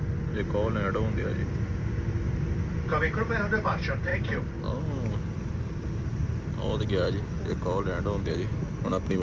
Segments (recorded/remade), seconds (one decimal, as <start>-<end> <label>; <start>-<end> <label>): 0.0-9.2 recorded